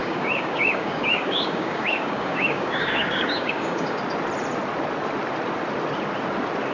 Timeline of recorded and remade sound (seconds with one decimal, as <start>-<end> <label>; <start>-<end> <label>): 0.0-4.0 remade; 4.0-6.7 recorded